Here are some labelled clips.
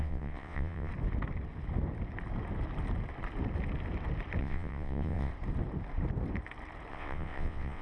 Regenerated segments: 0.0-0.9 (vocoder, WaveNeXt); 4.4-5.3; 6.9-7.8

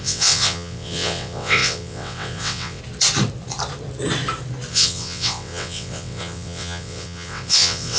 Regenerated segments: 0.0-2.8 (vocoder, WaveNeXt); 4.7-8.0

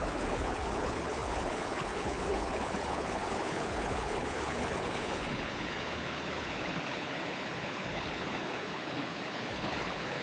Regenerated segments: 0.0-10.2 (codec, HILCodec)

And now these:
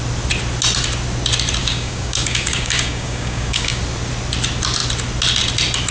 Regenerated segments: 1.6-3.8 (codec, DAC)

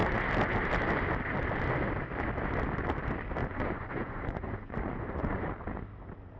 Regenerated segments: 3.4-5.5 (vocoder, Vocos)